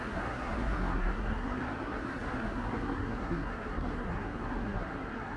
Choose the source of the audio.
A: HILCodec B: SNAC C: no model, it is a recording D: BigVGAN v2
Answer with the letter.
B